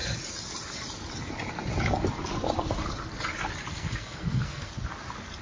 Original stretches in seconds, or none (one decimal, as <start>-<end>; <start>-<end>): 0.0-3.7; 4.7-5.4